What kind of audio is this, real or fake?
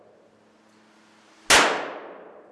real